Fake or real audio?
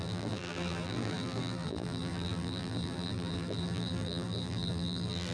fake